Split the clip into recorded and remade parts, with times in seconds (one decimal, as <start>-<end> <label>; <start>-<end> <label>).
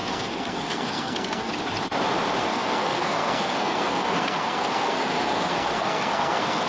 0.0-1.5 remade; 1.5-2.4 recorded; 2.4-6.7 remade